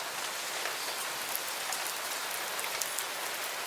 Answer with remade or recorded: recorded